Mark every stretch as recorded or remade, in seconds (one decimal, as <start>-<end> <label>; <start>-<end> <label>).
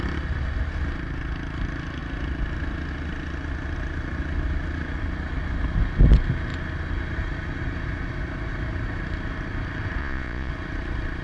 0.0-10.0 recorded; 10.0-10.5 remade; 10.5-11.2 recorded